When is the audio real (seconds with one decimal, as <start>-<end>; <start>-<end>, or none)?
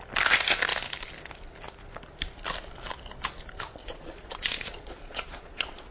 0.0-3.8